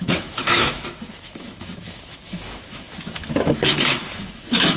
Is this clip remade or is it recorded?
remade